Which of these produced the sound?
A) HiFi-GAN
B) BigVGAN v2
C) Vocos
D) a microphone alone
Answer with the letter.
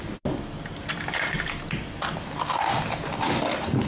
D